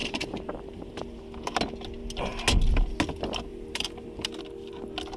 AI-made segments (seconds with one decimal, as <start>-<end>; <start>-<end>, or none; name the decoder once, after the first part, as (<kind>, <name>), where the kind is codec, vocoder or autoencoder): 0.0-1.2 (vocoder, BigVGAN v2); 3.5-4.4